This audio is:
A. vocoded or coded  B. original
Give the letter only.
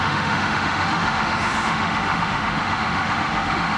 A